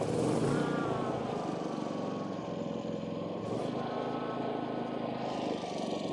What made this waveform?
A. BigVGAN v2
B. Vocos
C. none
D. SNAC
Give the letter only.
A